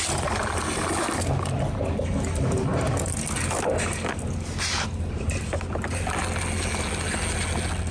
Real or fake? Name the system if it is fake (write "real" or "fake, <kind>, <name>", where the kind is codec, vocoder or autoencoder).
real